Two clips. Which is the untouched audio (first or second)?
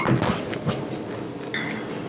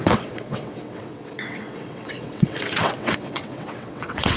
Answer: first